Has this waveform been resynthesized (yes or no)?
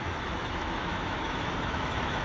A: yes